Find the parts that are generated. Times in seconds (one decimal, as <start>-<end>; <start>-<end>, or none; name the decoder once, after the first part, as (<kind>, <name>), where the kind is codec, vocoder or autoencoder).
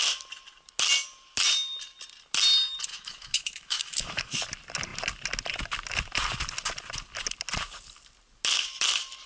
2.9-4.4 (autoencoder, DAC-VAE)